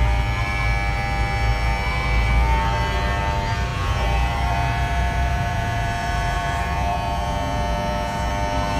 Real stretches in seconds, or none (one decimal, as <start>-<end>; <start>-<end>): 0.0-3.7; 8.3-8.8